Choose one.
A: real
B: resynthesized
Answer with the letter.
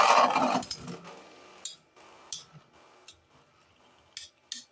A